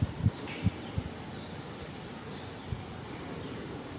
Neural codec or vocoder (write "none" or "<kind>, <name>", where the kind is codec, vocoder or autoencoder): none